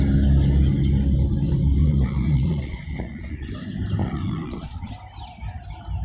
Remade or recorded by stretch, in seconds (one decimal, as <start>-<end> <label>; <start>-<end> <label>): 0.0-1.8 recorded; 1.8-3.5 remade; 3.5-4.0 recorded; 4.0-4.9 remade; 4.9-6.0 recorded